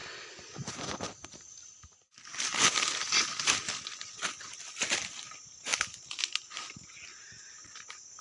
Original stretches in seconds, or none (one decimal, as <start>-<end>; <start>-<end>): 0.0-8.2